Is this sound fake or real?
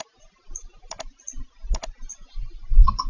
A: real